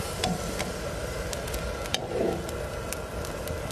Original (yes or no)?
yes